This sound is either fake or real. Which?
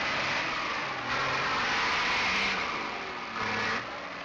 real